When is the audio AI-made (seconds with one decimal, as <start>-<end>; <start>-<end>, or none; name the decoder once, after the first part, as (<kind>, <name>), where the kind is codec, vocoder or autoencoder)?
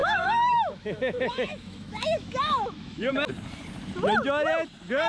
0.0-3.1 (autoencoder, DAC-VAE)